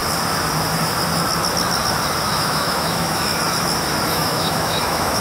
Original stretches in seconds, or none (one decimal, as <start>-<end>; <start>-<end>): 0.0-2.3; 3.3-4.1